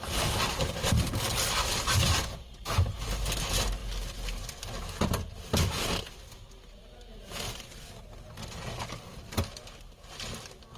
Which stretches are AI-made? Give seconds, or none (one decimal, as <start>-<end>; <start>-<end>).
none